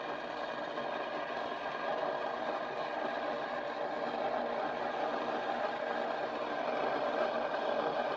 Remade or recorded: recorded